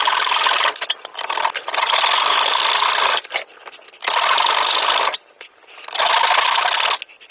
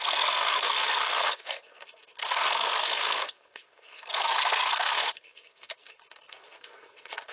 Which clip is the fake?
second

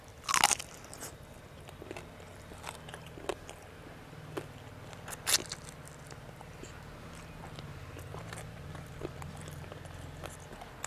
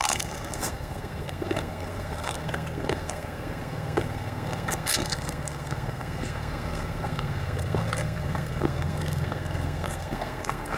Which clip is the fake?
second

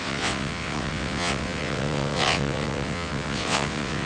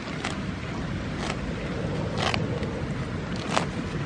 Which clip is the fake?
first